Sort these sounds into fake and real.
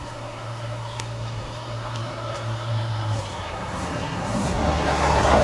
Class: fake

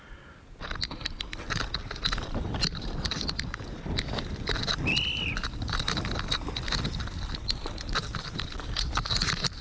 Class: real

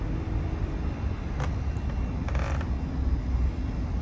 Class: real